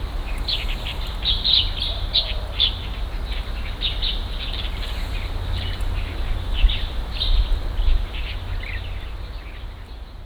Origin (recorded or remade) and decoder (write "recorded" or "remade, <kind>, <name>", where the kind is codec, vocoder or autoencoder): recorded